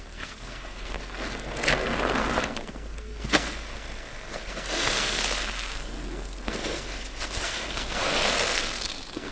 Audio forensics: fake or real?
fake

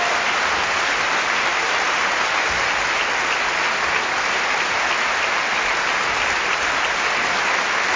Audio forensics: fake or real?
real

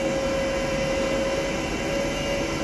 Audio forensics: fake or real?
real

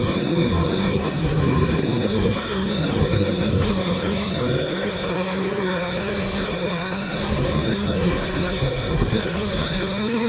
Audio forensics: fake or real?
fake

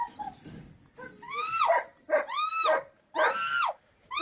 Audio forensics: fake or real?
real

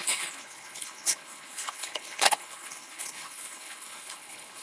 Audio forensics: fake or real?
fake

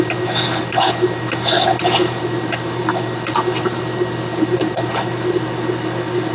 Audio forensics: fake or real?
real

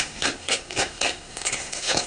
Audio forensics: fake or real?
fake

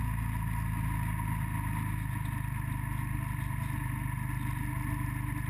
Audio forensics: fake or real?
real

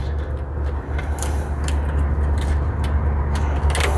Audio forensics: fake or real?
real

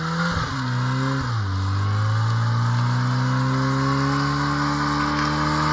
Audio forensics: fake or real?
real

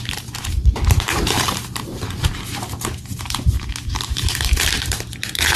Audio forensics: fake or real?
fake